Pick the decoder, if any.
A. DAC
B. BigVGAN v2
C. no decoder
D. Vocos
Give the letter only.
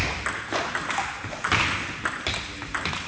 C